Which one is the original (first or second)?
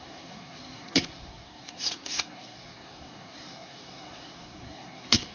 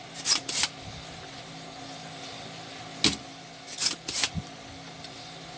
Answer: second